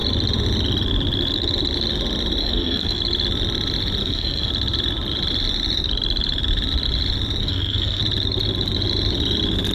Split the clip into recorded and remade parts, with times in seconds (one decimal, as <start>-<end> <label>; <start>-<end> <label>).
0.0-2.4 recorded; 2.4-3.0 remade; 3.0-4.0 recorded; 4.0-4.5 remade; 4.5-7.4 recorded; 7.4-8.0 remade; 8.0-9.7 recorded